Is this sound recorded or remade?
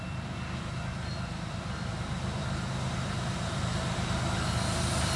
remade